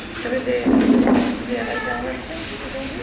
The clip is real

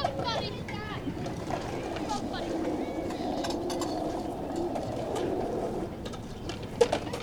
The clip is fake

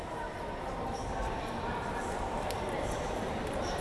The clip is fake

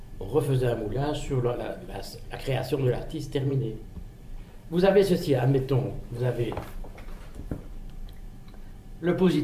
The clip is fake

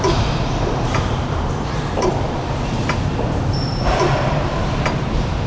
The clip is fake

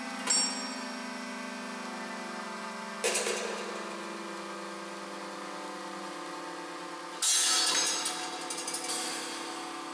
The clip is real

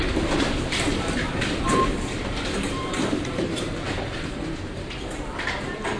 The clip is fake